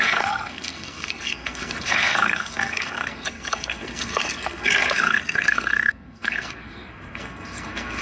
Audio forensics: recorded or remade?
remade